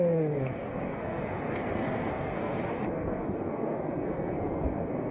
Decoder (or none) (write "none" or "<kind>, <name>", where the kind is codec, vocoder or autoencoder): codec, SNAC